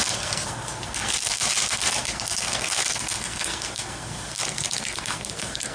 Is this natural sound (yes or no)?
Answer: no